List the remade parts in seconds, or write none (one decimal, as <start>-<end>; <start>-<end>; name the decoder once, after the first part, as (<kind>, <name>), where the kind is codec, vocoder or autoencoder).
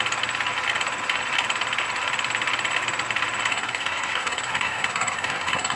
3.5-5.8 (codec, SNAC)